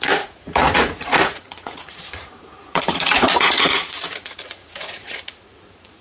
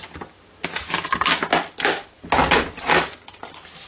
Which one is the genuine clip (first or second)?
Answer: second